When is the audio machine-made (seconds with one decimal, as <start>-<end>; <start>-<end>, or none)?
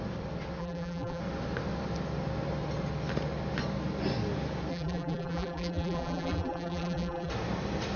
0.6-1.2; 4.7-7.3